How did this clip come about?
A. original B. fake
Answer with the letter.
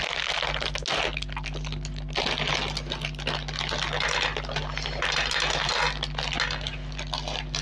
A